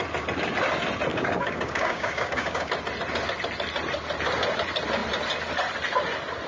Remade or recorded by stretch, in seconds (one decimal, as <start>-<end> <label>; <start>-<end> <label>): 0.0-1.1 recorded; 1.1-2.7 remade; 2.7-6.5 recorded